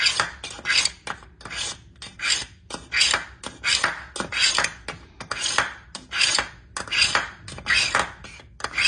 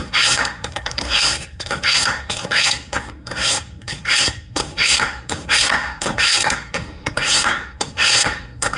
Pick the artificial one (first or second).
second